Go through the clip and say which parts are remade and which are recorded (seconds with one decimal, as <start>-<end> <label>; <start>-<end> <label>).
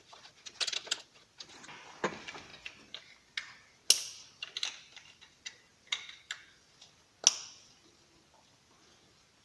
0.0-9.4 recorded